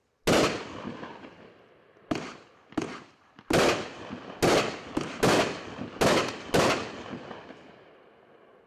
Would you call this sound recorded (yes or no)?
yes